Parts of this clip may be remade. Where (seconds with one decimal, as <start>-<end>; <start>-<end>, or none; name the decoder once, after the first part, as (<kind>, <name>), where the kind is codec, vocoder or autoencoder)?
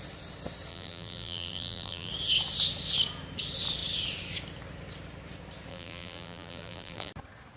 0.7-2.1 (vocoder, BigVGAN v2); 5.7-7.1